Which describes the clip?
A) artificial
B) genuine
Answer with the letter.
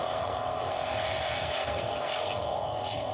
A